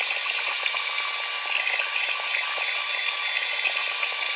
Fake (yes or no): no